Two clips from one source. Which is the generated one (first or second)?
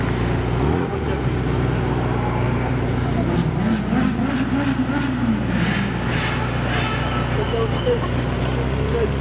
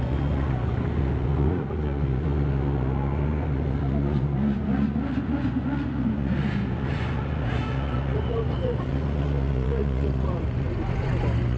second